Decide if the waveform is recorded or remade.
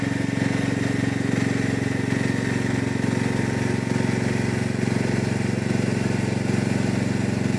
recorded